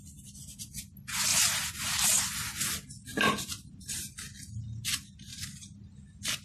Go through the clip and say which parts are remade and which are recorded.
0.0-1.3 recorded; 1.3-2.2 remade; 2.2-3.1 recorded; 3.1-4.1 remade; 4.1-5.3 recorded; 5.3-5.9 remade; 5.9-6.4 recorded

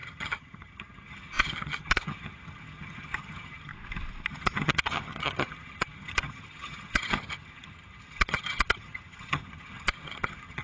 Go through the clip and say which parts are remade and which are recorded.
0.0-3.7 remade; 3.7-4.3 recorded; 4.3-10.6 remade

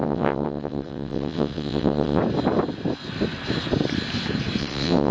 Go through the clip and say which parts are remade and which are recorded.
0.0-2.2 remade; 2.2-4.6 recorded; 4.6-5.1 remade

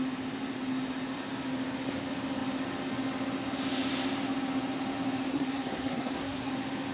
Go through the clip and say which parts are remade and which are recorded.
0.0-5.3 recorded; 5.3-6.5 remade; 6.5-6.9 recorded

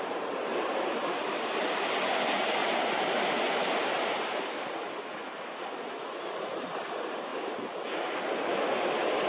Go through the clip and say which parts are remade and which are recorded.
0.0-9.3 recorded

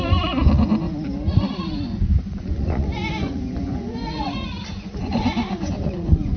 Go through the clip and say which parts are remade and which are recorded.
0.0-6.4 remade

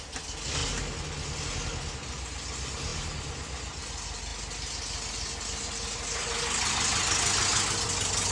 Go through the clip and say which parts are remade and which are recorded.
0.0-8.3 recorded

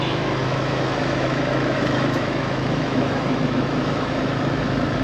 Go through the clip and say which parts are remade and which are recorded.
0.0-5.0 remade